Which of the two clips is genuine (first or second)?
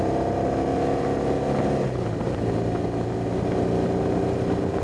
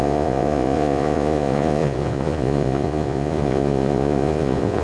first